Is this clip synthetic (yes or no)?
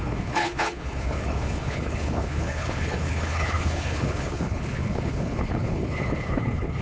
yes